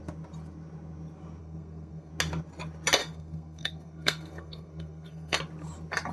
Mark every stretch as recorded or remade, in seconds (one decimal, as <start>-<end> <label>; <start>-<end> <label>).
0.0-1.4 recorded; 1.4-2.1 remade; 2.1-3.0 recorded; 3.0-5.4 remade; 5.4-6.1 recorded

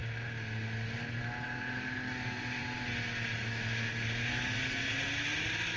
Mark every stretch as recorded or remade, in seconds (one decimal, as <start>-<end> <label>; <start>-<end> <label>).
0.0-5.8 recorded

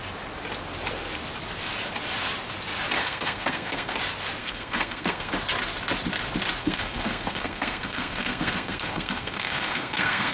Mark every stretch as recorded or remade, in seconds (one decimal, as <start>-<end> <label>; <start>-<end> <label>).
0.0-3.0 recorded; 3.0-4.0 remade; 4.0-4.4 recorded; 4.4-5.3 remade; 5.3-6.6 recorded; 6.6-10.3 remade

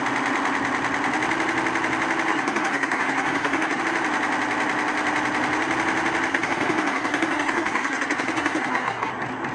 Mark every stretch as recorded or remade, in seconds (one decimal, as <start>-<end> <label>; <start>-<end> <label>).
0.0-2.3 recorded; 2.3-3.8 remade; 3.8-6.3 recorded; 6.3-9.1 remade; 9.1-9.5 recorded

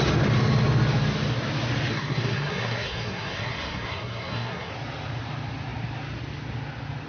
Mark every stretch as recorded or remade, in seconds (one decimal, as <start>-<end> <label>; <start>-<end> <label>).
0.0-1.9 recorded; 1.9-4.7 remade; 4.7-7.1 recorded

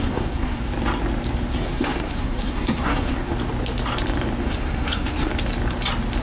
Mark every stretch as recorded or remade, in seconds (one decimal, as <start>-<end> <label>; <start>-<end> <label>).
0.0-0.7 remade; 0.7-1.5 recorded; 1.5-3.3 remade; 3.3-4.4 recorded; 4.4-5.3 remade; 5.3-6.2 recorded